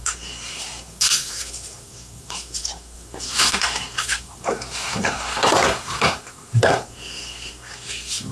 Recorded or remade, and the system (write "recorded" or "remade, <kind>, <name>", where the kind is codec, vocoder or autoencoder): remade, codec, SNAC